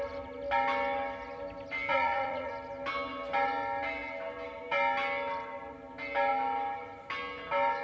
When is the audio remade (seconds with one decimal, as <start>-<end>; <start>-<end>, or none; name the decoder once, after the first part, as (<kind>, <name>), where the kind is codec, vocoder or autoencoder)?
1.9-2.5 (vocoder, Vocos)